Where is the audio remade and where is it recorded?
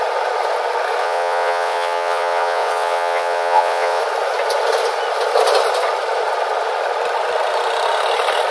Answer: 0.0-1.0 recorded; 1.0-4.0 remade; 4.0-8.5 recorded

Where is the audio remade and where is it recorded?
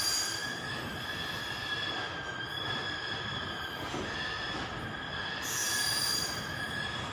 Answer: 0.0-7.1 recorded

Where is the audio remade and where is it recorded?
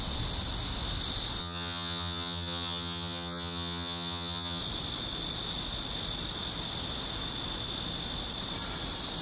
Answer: 0.0-1.4 recorded; 1.4-4.6 remade; 4.6-9.2 recorded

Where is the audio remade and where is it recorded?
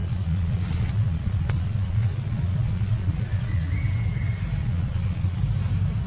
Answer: 0.0-3.7 remade; 3.7-4.6 recorded; 4.6-5.4 remade; 5.4-6.1 recorded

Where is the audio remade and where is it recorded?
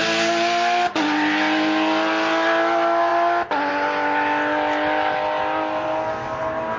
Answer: 0.0-6.8 recorded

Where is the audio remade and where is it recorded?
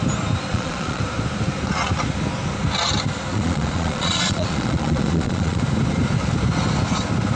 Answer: 0.0-0.5 recorded; 0.5-1.0 remade; 1.0-3.3 recorded; 3.3-5.6 remade; 5.6-7.4 recorded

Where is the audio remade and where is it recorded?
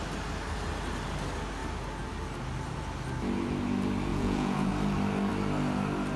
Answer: 0.0-4.1 recorded; 4.1-4.7 remade; 4.7-6.2 recorded